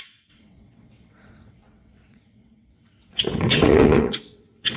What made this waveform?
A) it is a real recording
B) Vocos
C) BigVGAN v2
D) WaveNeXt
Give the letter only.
D